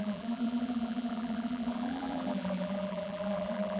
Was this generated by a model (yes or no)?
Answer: yes